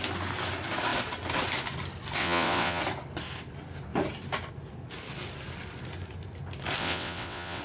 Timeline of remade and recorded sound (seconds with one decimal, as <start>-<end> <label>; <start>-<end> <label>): 0.0-2.2 recorded; 2.2-2.8 remade; 2.8-6.8 recorded; 6.8-7.6 remade